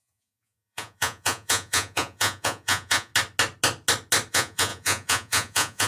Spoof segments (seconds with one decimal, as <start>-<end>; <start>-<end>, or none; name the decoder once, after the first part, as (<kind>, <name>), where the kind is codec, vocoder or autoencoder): 0.0-3.1 (vocoder, Vocos); 4.3-5.9